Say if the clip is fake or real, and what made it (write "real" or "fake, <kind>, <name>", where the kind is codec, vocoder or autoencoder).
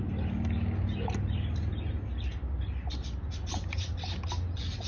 real